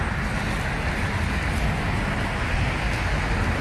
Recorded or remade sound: recorded